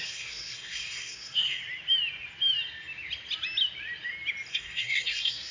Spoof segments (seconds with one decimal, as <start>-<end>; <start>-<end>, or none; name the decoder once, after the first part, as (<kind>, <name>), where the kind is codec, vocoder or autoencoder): 0.0-1.6 (codec, SNAC); 4.5-5.5